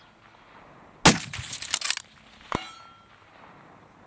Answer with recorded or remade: recorded